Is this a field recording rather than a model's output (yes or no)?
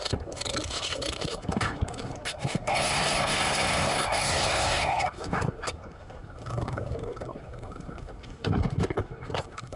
no